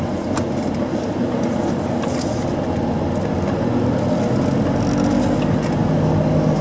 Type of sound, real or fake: real